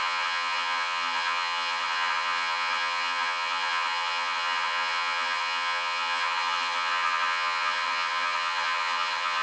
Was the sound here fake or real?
fake